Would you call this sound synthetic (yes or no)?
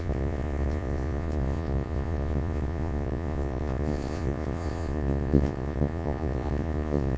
yes